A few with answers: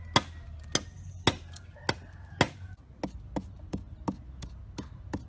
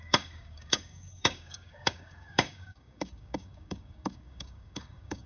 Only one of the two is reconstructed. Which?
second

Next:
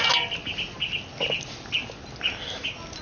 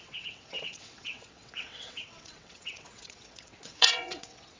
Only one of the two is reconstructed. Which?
second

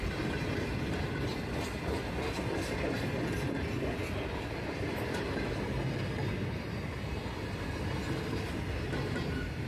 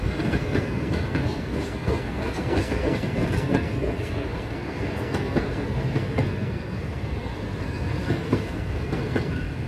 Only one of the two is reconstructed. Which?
second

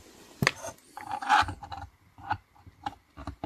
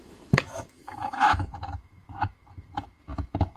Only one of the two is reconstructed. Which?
second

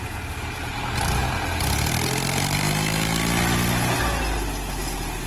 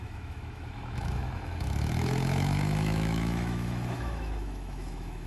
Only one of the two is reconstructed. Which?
second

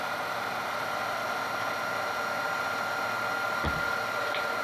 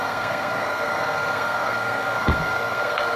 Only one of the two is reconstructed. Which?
second